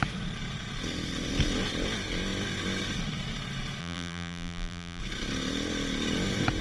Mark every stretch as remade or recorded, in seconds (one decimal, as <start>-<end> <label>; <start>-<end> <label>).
0.0-3.8 recorded; 3.8-5.0 remade; 5.0-6.6 recorded